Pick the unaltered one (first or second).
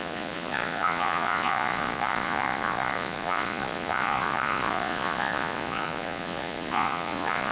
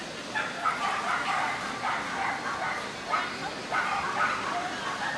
second